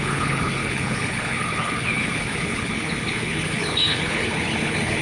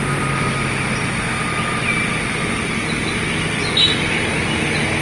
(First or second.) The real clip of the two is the second